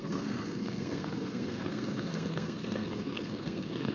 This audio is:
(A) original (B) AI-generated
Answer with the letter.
B